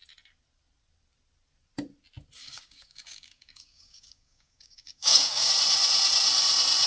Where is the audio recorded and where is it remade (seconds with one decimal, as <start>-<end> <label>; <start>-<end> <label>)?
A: 0.0-2.4 recorded; 2.4-5.5 remade; 5.5-6.9 recorded